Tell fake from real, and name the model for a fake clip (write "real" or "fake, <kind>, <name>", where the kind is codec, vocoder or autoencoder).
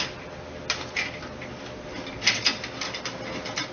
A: real